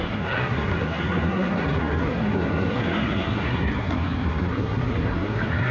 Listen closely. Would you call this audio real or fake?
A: fake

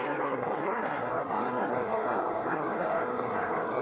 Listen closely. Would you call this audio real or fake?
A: fake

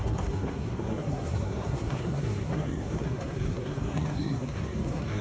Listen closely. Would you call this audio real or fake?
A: fake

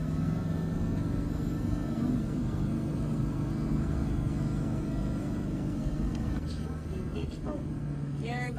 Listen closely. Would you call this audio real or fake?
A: fake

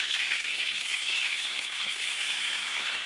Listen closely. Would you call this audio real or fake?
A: fake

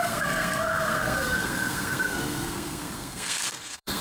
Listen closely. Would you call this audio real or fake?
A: fake